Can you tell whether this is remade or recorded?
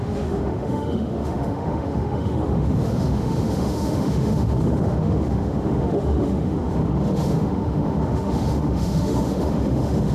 remade